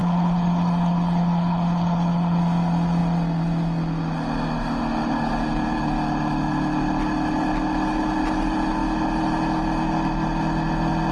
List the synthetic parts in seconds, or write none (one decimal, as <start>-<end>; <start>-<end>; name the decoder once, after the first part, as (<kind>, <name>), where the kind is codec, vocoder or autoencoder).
0.0-2.4 (codec, HILCodec)